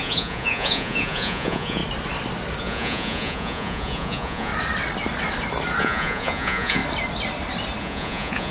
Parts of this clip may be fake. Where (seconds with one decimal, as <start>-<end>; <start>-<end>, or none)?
0.0-1.8; 2.6-4.5; 5.8-6.8; 7.8-8.5